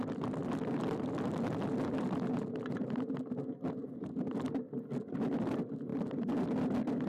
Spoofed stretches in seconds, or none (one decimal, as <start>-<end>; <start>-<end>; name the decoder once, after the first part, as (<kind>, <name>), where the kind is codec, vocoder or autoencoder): 5.9-6.5 (vocoder, BigVGAN v2)